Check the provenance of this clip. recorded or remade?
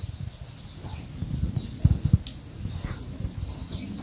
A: recorded